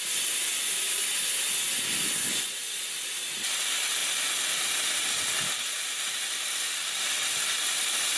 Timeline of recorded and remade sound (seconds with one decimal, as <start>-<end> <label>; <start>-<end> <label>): 0.0-2.6 recorded; 2.6-3.2 remade; 3.2-8.2 recorded